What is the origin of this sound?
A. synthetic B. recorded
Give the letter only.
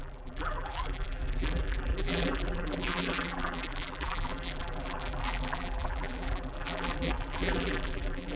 A